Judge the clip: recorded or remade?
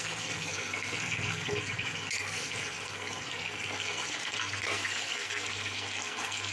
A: remade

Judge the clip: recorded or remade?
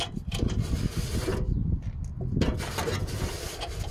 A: recorded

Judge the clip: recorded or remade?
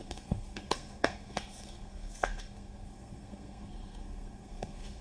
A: remade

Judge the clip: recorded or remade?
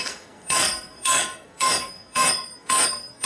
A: remade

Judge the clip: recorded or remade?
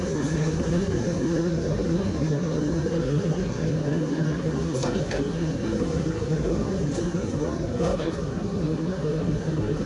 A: remade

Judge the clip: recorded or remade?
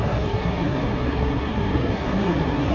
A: remade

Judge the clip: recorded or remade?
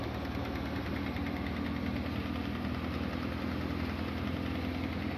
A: recorded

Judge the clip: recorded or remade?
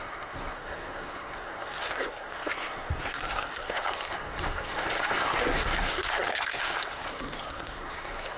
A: remade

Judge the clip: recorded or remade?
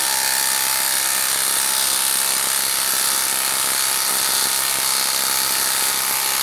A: recorded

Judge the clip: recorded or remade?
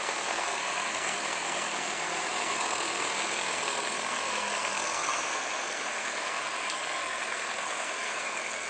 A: remade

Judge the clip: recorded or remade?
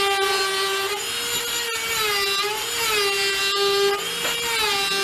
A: recorded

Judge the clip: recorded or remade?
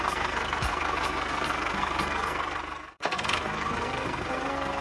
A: remade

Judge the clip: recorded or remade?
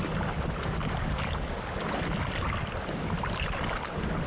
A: recorded